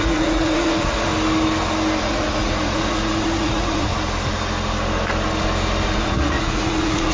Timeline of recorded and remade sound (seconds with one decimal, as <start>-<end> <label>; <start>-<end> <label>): 0.0-1.1 remade; 1.1-2.0 recorded; 2.0-3.9 remade; 3.9-6.0 recorded; 6.0-7.1 remade